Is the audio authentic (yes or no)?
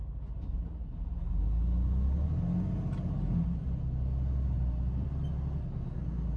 yes